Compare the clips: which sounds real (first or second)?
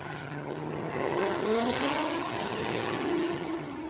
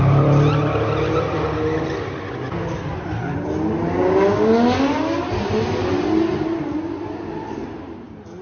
second